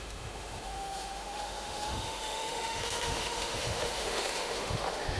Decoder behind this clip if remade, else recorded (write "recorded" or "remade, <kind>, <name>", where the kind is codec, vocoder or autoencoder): remade, autoencoder, DAC-VAE